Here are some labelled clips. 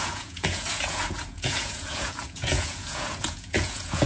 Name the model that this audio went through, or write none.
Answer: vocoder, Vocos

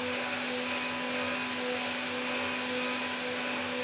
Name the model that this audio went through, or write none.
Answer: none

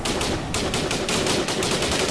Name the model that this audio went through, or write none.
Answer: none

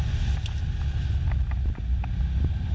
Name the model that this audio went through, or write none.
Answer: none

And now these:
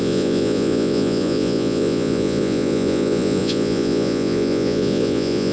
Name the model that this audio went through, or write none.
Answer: vocoder, Vocos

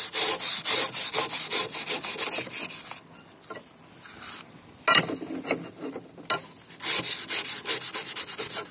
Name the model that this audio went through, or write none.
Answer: none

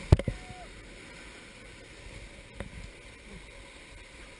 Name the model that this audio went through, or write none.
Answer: none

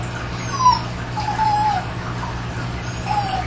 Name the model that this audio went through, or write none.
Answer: none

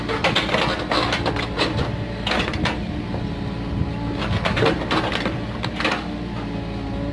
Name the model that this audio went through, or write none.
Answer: none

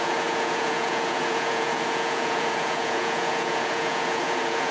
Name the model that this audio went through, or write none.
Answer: vocoder, Vocos